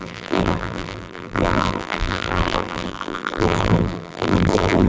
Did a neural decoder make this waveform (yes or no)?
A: yes